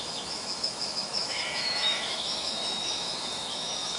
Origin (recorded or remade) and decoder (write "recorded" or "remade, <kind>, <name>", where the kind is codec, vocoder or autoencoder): remade, autoencoder, DAC-VAE